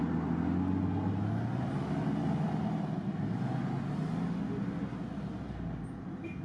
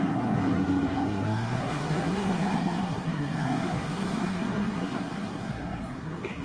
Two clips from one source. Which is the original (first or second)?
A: first